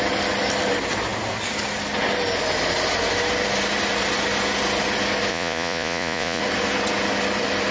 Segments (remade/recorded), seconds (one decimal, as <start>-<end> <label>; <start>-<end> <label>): 0.0-5.3 recorded; 5.3-6.4 remade; 6.4-7.7 recorded